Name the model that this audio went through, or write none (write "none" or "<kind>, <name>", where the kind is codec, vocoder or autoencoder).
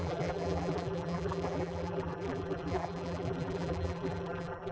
vocoder, BigVGAN v2